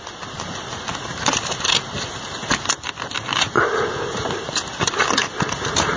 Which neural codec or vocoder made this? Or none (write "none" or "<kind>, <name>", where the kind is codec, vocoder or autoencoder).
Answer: none